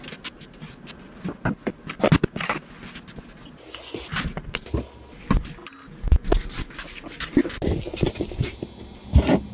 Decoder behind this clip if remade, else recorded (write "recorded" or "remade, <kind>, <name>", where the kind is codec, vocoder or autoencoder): recorded